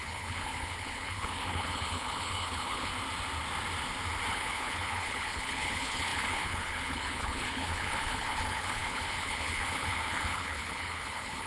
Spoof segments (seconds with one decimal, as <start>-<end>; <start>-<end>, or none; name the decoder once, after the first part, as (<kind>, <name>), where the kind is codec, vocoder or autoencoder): 0.0-2.9 (codec, HILCodec); 4.3-11.5